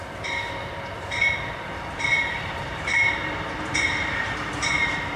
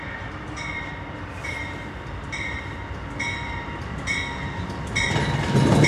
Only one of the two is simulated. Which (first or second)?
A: first